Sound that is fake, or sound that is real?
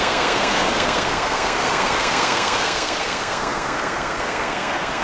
fake